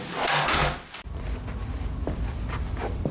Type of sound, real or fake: real